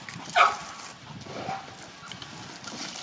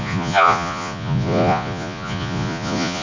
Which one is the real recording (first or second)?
first